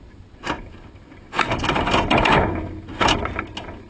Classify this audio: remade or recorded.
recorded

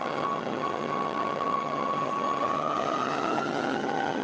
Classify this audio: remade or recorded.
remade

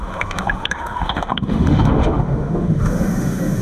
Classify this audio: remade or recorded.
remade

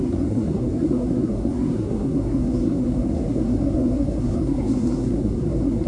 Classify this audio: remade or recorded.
remade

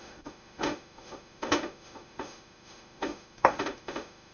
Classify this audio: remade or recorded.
remade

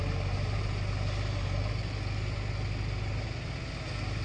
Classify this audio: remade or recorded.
recorded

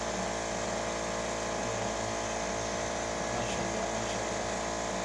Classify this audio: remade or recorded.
recorded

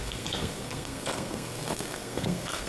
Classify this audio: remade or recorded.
remade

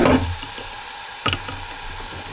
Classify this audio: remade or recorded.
recorded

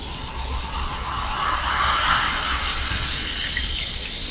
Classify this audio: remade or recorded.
recorded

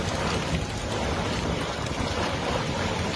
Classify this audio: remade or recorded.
recorded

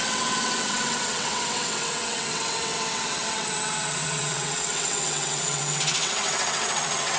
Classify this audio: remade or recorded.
remade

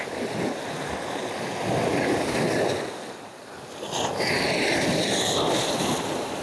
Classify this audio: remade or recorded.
recorded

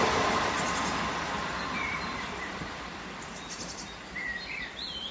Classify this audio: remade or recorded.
recorded